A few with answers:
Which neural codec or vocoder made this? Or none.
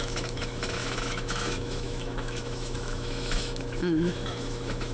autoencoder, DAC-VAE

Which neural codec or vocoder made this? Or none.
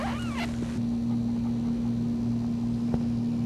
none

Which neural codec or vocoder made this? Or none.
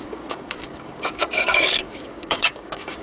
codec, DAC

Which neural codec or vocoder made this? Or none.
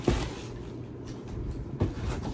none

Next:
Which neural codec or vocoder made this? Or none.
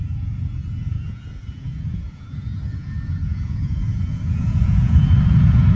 vocoder, Vocos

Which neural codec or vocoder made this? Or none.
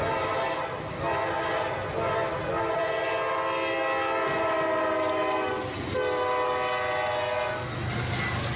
none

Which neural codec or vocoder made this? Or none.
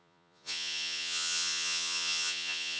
vocoder, Vocos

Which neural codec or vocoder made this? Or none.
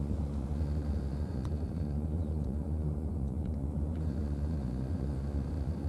vocoder, Vocos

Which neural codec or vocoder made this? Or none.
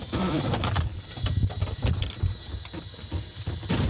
vocoder, BigVGAN v2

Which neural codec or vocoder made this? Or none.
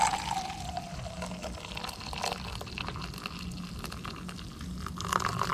none